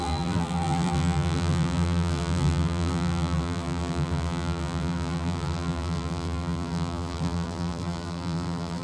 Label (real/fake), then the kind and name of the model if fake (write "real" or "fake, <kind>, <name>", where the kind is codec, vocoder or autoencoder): fake, vocoder, BigVGAN v2